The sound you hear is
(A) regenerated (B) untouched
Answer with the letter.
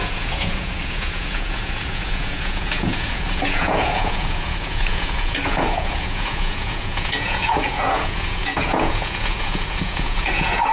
A